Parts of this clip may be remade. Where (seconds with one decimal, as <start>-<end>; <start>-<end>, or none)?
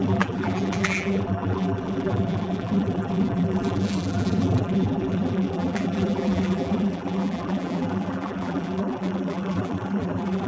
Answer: 0.0-10.5